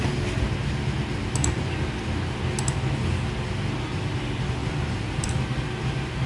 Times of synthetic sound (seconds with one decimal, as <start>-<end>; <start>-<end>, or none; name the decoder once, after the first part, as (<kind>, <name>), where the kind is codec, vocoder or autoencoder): 4.6-5.3 (vocoder, BigVGAN v2)